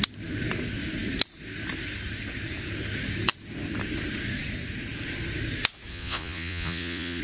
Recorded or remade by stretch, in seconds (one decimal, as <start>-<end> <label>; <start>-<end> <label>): 0.0-5.9 recorded; 5.9-7.2 remade